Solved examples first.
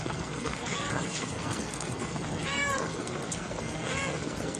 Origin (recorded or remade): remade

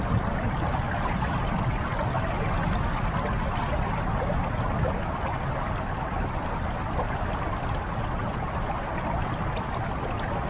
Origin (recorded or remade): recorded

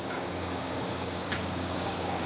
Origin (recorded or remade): remade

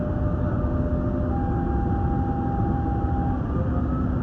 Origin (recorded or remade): recorded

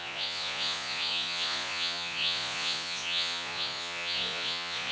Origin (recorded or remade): remade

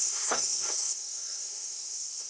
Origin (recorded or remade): remade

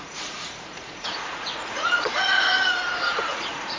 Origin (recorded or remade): remade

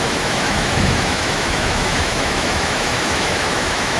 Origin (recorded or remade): remade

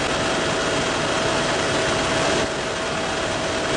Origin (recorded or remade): recorded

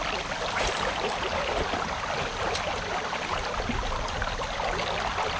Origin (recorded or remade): recorded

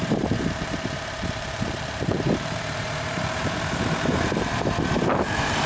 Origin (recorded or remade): remade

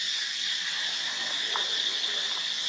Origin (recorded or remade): recorded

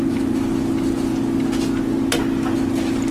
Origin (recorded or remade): recorded